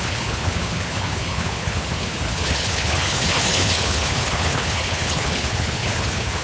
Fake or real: fake